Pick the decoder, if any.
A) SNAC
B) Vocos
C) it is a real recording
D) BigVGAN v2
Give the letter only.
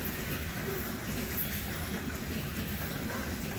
C